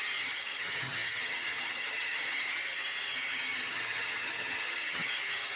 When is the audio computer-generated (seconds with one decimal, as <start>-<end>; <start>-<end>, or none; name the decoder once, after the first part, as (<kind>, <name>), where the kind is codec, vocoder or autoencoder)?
0.0-5.6 (vocoder, HiFi-GAN)